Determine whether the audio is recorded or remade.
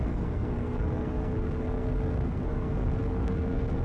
remade